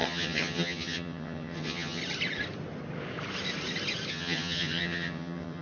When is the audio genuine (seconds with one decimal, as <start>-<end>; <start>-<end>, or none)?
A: 2.0-4.1